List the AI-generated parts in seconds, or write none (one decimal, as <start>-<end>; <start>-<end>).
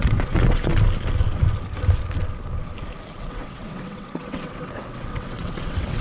0.0-0.7; 3.2-6.0